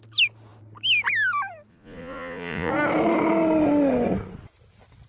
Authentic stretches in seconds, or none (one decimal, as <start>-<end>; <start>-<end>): 0.0-1.7; 2.7-5.1